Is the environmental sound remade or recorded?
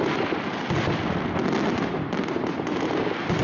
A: recorded